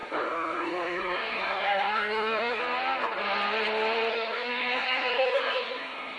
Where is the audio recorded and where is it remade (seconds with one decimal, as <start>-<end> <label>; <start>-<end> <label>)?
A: 0.0-2.6 remade; 2.6-4.1 recorded; 4.1-6.2 remade

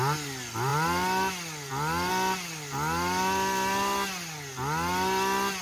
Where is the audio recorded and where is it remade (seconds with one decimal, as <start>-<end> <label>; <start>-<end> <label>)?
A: 0.0-5.6 recorded